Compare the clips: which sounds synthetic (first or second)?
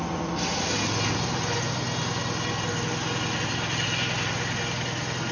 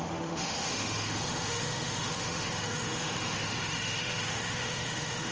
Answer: second